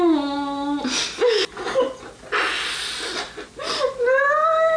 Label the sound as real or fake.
real